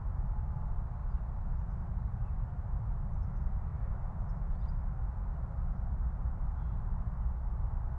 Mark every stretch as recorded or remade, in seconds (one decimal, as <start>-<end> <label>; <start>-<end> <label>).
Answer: 0.0-1.0 recorded; 1.0-1.5 remade; 1.5-3.7 recorded; 3.7-4.4 remade; 4.4-8.0 recorded